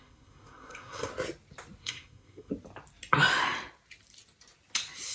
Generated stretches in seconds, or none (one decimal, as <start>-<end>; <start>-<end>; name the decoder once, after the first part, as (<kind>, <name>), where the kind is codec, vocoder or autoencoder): 0.0-1.1 (codec, SNAC); 1.8-2.5